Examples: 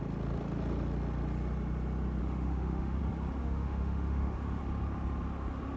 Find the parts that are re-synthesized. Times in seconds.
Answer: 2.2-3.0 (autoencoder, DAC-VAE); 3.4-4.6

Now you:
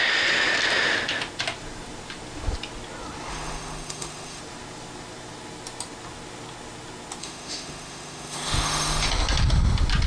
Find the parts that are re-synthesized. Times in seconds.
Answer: 3.3-4.4 (autoencoder, DAC-VAE); 7.2-9.1

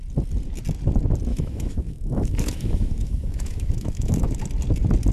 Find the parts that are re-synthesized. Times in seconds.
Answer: 1.3-4.4 (autoencoder, DAC-VAE)

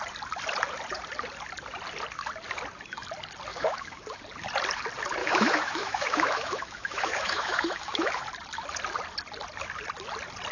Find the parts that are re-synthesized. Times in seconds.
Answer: 3.5-4.2 (autoencoder, DAC-VAE); 5.2-8.2

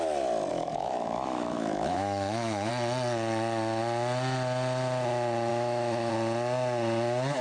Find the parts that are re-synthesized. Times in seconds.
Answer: 0.5-2.7 (autoencoder, DAC-VAE); 5.5-6.1

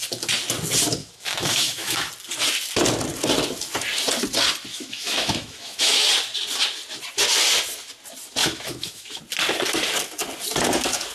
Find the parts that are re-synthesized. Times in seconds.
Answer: 1.0-2.1 (autoencoder, DAC-VAE); 4.7-6.1; 8.4-9.2

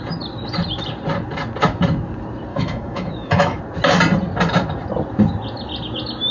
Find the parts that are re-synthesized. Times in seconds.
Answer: 2.5-3.6 (autoencoder, DAC-VAE)